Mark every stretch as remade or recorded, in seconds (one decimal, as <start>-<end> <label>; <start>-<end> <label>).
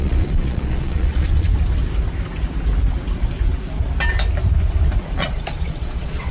0.0-1.5 remade; 1.5-5.0 recorded; 5.0-6.3 remade